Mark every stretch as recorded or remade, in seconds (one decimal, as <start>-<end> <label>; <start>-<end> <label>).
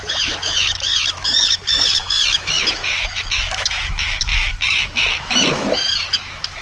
0.0-6.6 remade